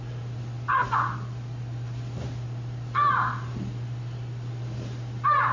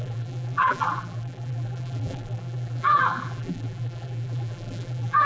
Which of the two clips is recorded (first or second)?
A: first